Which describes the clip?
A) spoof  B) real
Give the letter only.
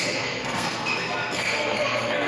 A